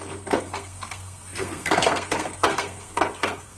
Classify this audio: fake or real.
fake